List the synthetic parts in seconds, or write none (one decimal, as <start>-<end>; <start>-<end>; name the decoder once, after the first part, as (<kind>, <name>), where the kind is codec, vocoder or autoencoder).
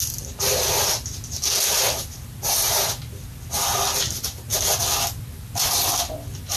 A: none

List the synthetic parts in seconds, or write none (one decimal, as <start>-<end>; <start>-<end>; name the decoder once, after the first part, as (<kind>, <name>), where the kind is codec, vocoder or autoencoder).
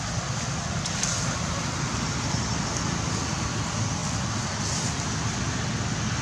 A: none